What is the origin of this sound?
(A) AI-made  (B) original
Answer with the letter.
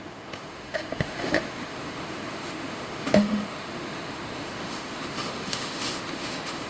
A